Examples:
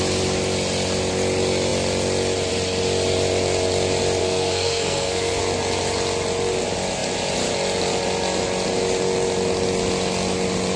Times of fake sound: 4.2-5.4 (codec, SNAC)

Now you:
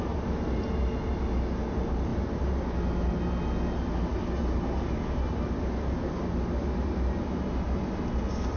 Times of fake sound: none

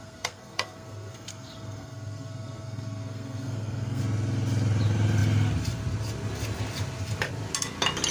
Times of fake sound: 0.0-4.0 (codec, SNAC)

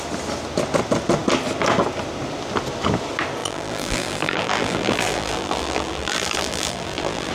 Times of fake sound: 3.4-7.3 (vocoder, BigVGAN v2)

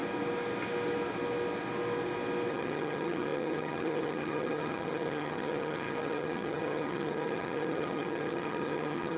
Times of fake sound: 2.5-9.2 (vocoder, HiFi-GAN)

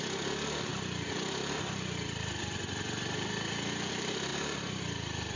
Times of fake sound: 0.0-5.4 (vocoder, BigVGAN v2)

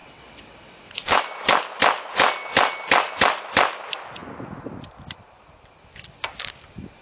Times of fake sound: 0.0-1.2 (vocoder, WaveNeXt)

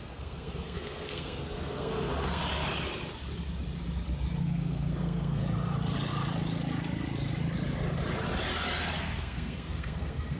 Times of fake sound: 0.0-2.4 (codec, SNAC); 4.4-5.4; 9.0-10.4